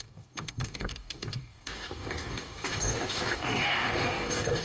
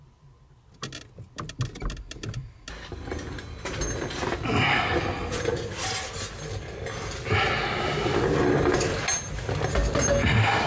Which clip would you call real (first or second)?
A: second